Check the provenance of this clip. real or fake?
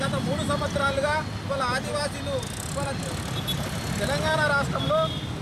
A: real